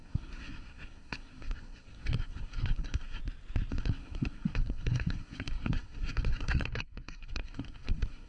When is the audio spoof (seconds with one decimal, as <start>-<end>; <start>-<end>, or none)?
0.0-3.2; 3.7-8.3